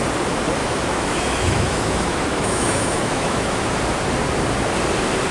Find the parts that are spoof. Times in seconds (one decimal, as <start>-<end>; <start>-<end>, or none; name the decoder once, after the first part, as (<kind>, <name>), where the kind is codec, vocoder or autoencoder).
0.6-3.8 (autoencoder, DAC-VAE)